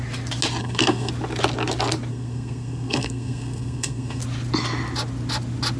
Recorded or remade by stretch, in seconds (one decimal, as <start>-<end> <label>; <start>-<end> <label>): 0.0-0.6 recorded; 0.6-1.1 remade; 1.1-2.1 recorded; 2.1-4.2 remade; 4.2-5.8 recorded